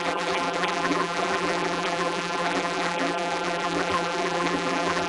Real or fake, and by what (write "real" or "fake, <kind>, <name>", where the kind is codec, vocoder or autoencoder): fake, vocoder, BigVGAN v2